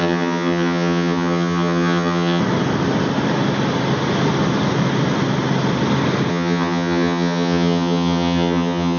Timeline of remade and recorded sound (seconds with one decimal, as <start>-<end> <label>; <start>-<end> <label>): 0.0-2.4 remade; 2.4-6.3 recorded; 6.3-9.0 remade